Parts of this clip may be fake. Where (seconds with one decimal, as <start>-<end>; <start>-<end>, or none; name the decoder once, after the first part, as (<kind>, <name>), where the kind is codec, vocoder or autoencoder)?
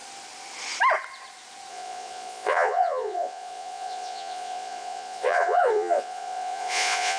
1.7-7.2 (vocoder, Vocos)